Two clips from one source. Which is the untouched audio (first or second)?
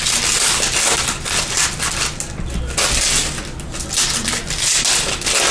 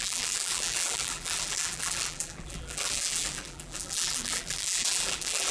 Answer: first